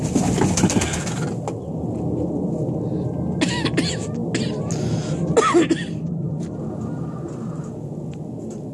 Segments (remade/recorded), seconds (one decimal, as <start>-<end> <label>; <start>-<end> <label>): 0.0-8.7 recorded